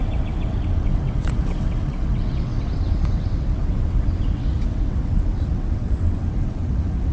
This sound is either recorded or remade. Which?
remade